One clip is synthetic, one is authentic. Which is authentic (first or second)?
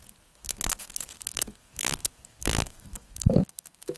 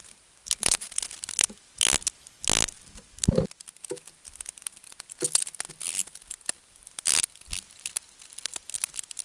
second